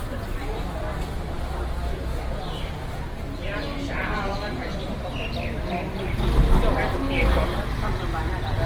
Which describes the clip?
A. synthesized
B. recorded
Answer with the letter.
B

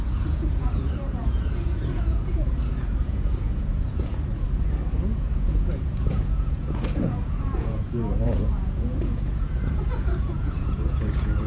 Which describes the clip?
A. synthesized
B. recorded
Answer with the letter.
A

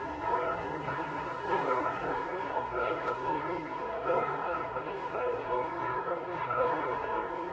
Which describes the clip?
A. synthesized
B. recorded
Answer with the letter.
A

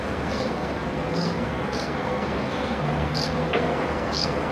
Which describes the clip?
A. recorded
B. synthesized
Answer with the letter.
B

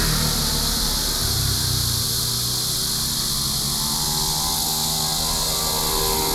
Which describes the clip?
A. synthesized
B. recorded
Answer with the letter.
B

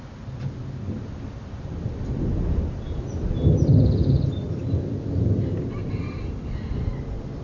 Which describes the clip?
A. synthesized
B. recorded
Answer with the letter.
B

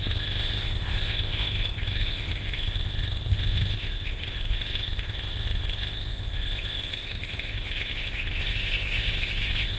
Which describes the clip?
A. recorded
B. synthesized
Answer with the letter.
B